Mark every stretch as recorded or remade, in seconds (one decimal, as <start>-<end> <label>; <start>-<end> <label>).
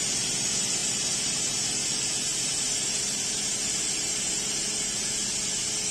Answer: 0.0-5.9 recorded